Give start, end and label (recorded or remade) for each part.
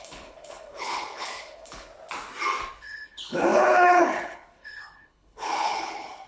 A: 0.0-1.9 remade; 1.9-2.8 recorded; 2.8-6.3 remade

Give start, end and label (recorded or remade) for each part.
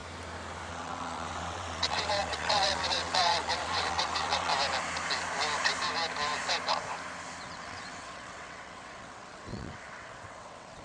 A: 0.0-0.7 recorded; 0.7-4.5 remade; 4.5-7.4 recorded; 7.4-10.8 remade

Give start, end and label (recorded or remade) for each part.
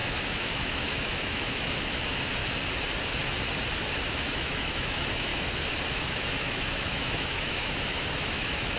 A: 0.0-2.4 remade; 2.4-3.8 recorded; 3.8-5.3 remade; 5.3-5.9 recorded; 5.9-8.8 remade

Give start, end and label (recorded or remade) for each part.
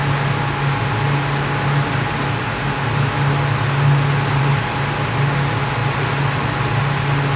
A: 0.0-7.4 recorded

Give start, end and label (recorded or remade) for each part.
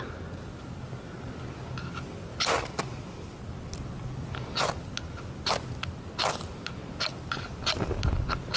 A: 0.0-8.6 recorded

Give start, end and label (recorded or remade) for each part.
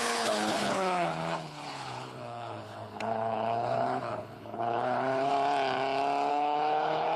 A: 0.0-5.3 remade; 5.3-6.3 recorded; 6.3-7.2 remade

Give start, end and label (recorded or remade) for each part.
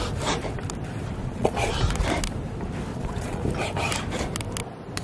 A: 0.0-1.2 recorded; 1.2-1.7 remade; 1.7-2.9 recorded; 2.9-3.4 remade; 3.4-5.0 recorded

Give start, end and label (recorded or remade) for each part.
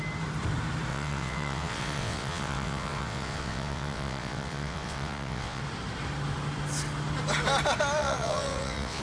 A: 0.0-0.9 recorded; 0.9-5.6 remade; 5.6-8.0 recorded; 8.0-9.0 remade